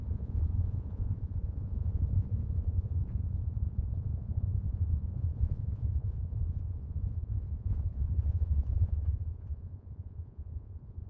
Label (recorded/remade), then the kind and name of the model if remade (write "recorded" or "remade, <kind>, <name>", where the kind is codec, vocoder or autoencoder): remade, vocoder, Vocos